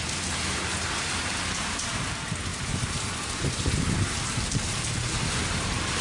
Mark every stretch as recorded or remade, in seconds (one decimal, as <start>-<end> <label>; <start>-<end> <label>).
0.0-6.0 remade

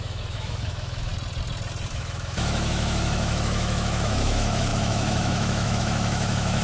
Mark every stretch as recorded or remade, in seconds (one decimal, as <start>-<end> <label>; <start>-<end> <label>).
0.0-1.1 remade; 1.1-1.9 recorded; 1.9-6.6 remade

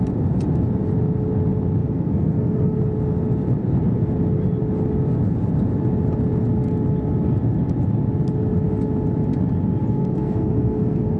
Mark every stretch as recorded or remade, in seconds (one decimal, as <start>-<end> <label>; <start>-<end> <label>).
0.0-1.8 recorded; 1.8-2.8 remade; 2.8-9.8 recorded; 9.8-11.2 remade

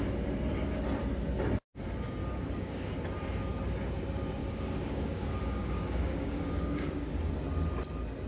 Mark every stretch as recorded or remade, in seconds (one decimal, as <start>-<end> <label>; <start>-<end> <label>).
0.0-2.2 recorded; 2.2-2.9 remade; 2.9-4.4 recorded; 4.4-7.3 remade; 7.3-8.3 recorded

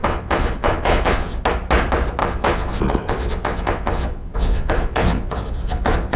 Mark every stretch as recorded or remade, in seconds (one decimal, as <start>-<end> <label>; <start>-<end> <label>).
0.0-1.4 remade; 1.4-2.2 recorded; 2.2-6.2 remade

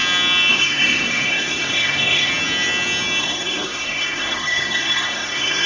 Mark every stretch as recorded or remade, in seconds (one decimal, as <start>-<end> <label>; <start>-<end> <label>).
0.0-0.5 recorded; 0.5-2.3 remade; 2.3-3.2 recorded; 3.2-5.7 remade

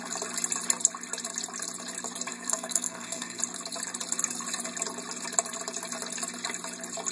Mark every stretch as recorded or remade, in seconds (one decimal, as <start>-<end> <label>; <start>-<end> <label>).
0.0-2.3 recorded; 2.3-3.4 remade; 3.4-7.1 recorded

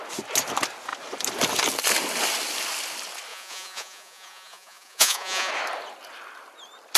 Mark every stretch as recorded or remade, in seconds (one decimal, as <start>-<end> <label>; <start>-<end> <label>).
0.0-3.3 recorded; 3.3-5.5 remade; 5.5-7.0 recorded